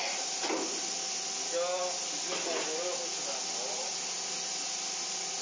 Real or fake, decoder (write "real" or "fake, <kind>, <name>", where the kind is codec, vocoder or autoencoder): real